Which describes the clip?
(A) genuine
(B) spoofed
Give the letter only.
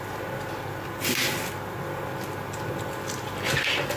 A